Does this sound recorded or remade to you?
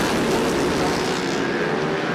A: recorded